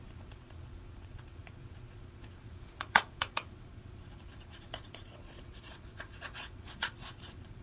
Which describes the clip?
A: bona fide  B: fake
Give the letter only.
B